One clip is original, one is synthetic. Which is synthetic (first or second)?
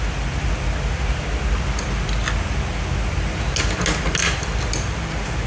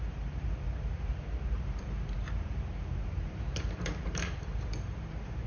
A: second